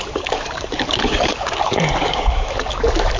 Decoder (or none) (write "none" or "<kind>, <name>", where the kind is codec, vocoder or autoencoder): codec, DAC